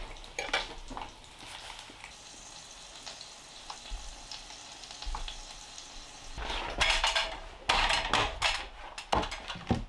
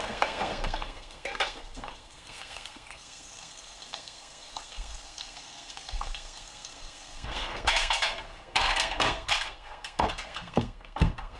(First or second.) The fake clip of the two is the second